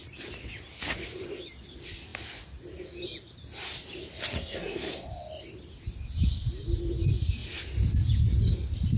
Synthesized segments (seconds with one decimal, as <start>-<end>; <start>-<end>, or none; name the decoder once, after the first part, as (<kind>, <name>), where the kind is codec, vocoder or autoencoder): 4.3-5.1 (codec, SNAC)